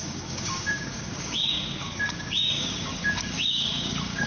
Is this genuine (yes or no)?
no